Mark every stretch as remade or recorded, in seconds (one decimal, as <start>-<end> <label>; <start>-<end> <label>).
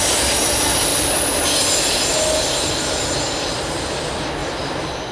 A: 0.0-4.4 recorded; 4.4-5.1 remade